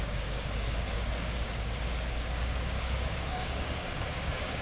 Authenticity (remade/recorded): remade